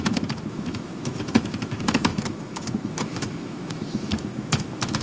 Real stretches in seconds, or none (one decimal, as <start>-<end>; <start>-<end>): none